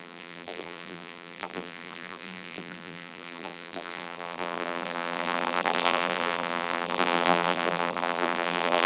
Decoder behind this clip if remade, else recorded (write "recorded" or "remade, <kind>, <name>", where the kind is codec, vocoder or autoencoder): remade, vocoder, BigVGAN v2